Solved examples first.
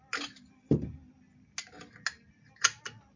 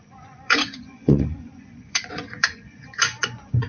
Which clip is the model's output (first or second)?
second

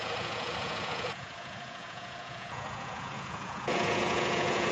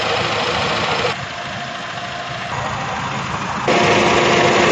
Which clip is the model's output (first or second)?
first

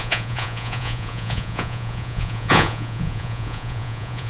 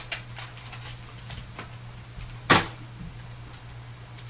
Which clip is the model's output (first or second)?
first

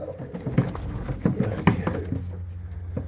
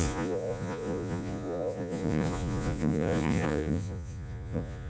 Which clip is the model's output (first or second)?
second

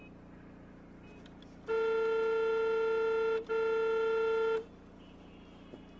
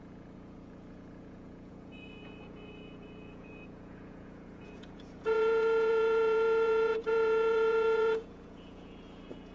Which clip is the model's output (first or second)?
second